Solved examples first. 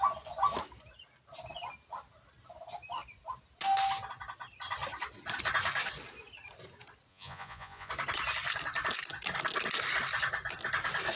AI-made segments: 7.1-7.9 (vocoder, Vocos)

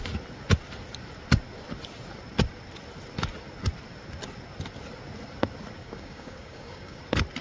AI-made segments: 5.8-7.0 (codec, DAC)